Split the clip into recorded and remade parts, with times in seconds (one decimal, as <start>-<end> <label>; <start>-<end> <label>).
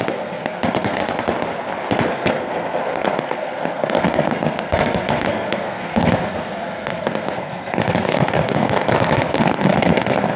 0.0-1.0 remade; 1.0-2.1 recorded; 2.1-10.4 remade